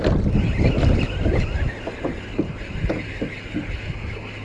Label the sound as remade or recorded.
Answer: recorded